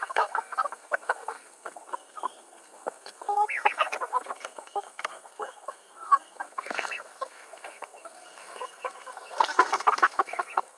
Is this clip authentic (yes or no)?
no